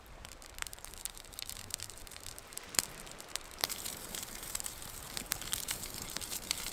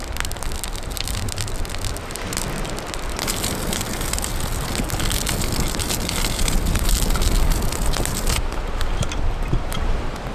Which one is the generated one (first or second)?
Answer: first